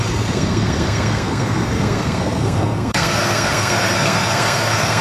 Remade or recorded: remade